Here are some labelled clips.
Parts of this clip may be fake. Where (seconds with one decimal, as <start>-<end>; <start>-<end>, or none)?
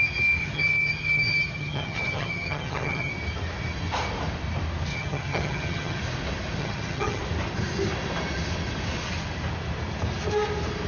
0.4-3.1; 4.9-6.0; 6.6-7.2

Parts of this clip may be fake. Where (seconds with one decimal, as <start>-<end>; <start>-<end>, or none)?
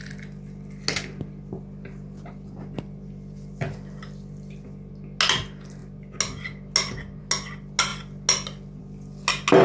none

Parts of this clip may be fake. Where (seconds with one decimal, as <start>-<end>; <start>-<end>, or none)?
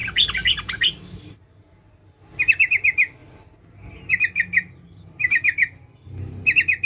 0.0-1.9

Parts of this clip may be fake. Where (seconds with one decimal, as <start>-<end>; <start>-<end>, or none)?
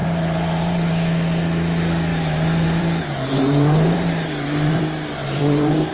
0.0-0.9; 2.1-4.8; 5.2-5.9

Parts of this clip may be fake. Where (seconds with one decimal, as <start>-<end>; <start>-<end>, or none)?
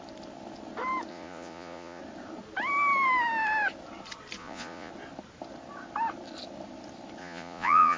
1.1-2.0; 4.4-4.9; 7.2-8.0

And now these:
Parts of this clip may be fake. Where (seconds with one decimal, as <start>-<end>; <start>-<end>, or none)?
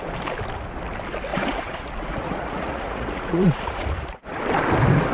1.3-4.4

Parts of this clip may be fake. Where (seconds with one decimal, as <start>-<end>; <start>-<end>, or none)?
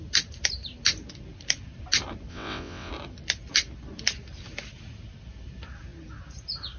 2.3-2.9